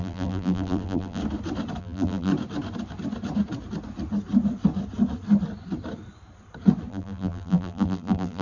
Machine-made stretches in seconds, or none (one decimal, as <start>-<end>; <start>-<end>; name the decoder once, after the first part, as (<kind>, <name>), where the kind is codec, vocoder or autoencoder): 0.0-1.2 (vocoder, BigVGAN v2); 1.8-2.3; 6.9-8.4